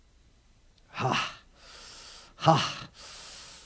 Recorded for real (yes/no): yes